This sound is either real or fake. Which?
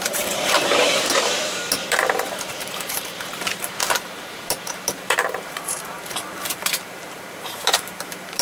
fake